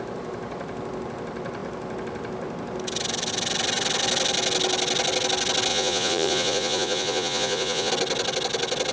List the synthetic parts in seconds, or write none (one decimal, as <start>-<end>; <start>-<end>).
5.7-7.9